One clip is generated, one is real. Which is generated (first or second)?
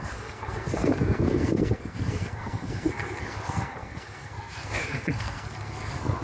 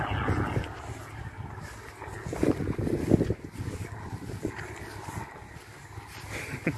first